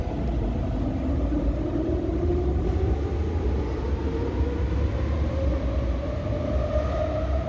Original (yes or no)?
yes